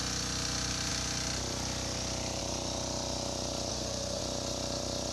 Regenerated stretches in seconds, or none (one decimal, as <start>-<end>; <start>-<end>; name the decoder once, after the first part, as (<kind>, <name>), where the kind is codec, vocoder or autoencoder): 3.7-4.2 (codec, SNAC)